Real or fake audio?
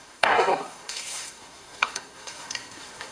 fake